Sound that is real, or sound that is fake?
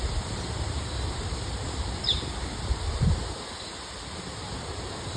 real